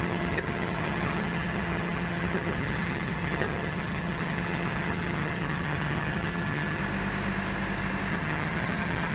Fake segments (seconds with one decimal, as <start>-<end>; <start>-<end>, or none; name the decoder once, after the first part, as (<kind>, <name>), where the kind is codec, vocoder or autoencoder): 0.0-6.8 (vocoder, HiFi-GAN); 8.1-9.1